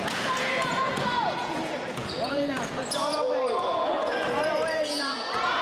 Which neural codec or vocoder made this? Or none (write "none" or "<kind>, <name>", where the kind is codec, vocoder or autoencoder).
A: vocoder, Vocos